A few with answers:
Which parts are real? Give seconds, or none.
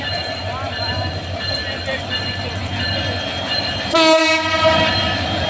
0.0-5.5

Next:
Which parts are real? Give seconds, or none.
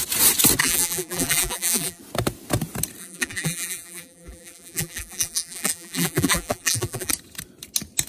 0.0-0.6; 2.0-3.0; 7.1-8.1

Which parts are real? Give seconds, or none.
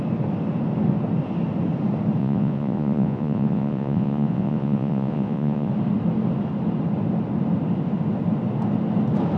0.0-2.2; 5.7-9.4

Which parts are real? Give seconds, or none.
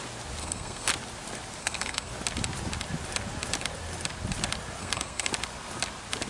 0.0-0.4; 0.9-1.6; 2.1-4.8; 5.3-6.3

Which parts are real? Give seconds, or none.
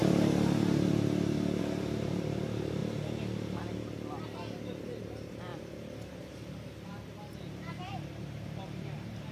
0.0-1.6; 2.8-5.0; 5.5-7.4